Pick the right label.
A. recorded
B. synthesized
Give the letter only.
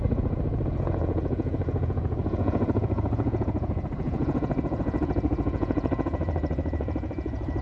B